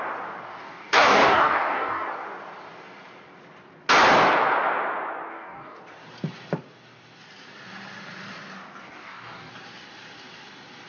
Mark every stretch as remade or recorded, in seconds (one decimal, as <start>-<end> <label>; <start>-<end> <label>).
0.0-0.5 recorded; 0.5-2.1 remade; 2.1-5.3 recorded; 5.3-5.8 remade; 5.8-8.8 recorded; 8.8-9.5 remade; 9.5-10.9 recorded